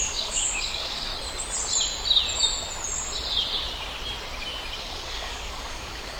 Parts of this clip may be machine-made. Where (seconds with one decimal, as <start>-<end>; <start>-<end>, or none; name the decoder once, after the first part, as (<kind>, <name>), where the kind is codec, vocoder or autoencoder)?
0.0-1.1 (codec, DAC); 4.8-6.2